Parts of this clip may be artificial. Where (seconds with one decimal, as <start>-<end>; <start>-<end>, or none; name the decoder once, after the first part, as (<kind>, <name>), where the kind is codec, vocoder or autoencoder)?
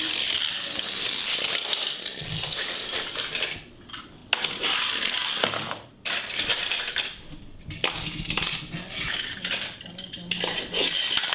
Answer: none